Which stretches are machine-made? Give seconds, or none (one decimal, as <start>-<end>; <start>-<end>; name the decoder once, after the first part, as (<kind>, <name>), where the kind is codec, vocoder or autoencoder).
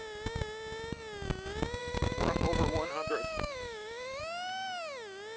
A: 1.8-4.2 (autoencoder, DAC-VAE)